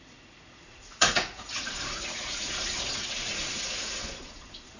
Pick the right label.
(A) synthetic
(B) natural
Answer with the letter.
A